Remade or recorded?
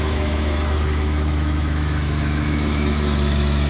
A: remade